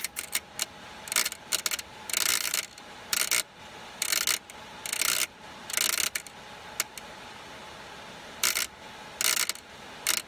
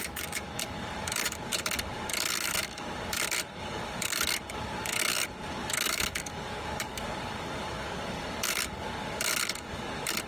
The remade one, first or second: second